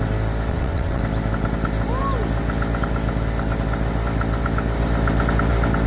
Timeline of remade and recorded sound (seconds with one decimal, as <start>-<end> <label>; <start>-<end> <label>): 0.0-0.5 recorded; 0.5-1.0 remade; 1.0-5.9 recorded